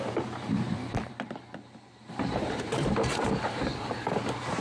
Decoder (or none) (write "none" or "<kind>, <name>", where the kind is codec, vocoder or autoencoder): vocoder, BigVGAN v2